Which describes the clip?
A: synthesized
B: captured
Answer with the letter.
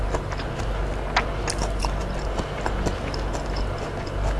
B